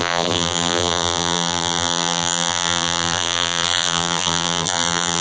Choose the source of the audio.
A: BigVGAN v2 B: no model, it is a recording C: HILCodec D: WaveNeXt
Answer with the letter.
A